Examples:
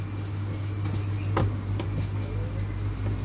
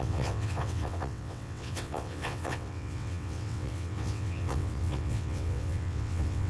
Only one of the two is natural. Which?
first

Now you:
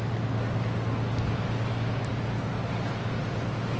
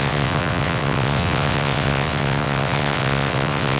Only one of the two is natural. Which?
first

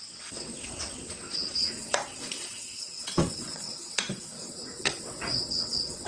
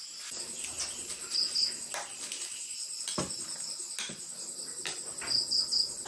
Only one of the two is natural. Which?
second